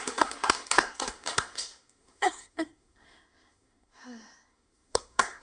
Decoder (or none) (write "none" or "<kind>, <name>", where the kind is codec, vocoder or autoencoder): codec, SNAC